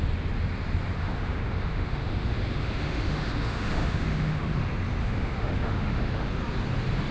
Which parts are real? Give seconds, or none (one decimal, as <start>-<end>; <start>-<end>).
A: 0.0-1.0; 4.5-5.0; 6.3-7.1